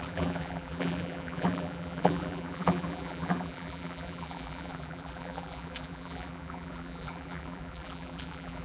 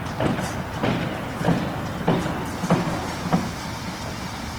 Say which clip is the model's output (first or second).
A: first